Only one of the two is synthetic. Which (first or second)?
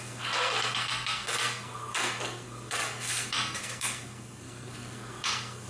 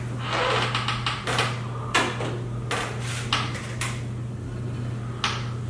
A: first